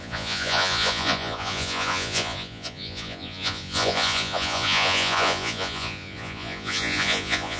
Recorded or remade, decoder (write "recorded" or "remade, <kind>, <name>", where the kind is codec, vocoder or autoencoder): remade, vocoder, Vocos